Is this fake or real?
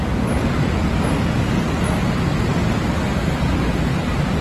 real